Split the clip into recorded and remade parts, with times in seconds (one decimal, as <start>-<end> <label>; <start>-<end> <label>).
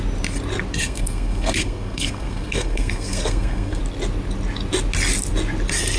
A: 0.0-0.8 recorded; 0.8-3.8 remade; 3.8-6.0 recorded